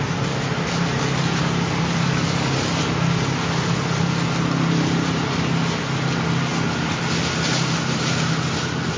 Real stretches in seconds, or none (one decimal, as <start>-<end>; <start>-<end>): 0.0-6.5; 7.0-9.0